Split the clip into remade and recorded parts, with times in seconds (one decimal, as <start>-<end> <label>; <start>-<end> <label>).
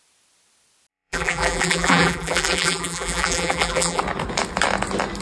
0.0-0.9 recorded; 0.9-4.0 remade; 4.0-5.2 recorded